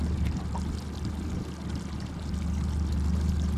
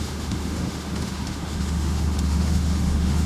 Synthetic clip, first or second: second